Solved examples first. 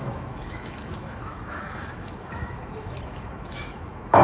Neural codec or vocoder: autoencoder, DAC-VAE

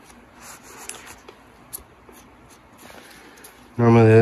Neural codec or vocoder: none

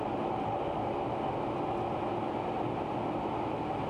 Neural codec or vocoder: none